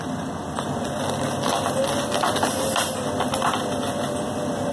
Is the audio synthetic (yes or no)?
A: no